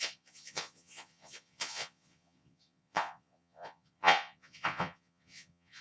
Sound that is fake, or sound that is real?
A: fake